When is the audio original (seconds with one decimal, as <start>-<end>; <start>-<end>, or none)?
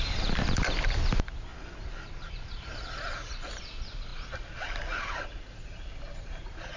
0.0-6.8